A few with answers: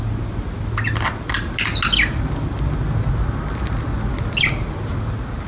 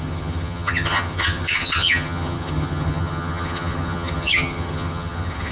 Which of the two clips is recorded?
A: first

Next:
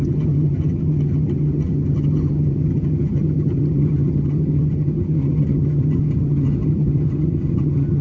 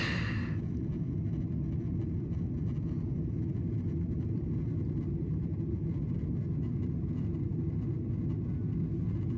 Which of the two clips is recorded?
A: second